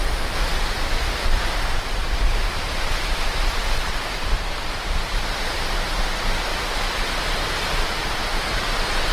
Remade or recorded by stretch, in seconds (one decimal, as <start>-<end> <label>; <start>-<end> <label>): 0.0-0.5 recorded; 0.5-5.5 remade; 5.5-6.5 recorded; 6.5-9.1 remade